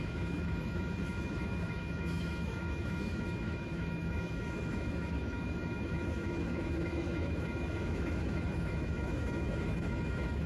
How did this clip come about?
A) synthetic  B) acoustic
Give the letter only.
A